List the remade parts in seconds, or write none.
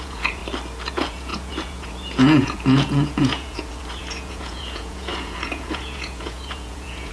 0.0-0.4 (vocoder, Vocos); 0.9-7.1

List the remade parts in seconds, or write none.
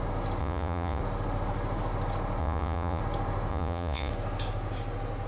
0.4-1.0 (vocoder, Vocos); 2.4-3.0; 3.5-4.1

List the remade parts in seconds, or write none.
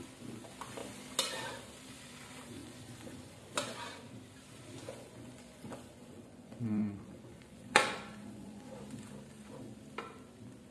2.6-3.4 (vocoder, Vocos); 4.8-8.8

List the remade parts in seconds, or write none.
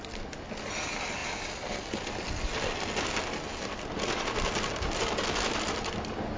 none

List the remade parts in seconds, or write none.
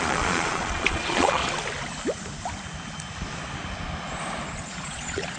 0.0-1.4 (vocoder, Vocos); 4.6-5.4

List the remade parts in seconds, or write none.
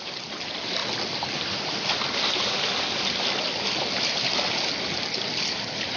none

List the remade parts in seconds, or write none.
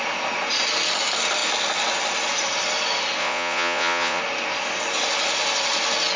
3.2-4.2 (vocoder, Vocos)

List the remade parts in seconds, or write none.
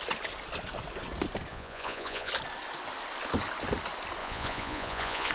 1.5-2.3 (vocoder, Vocos); 4.2-5.3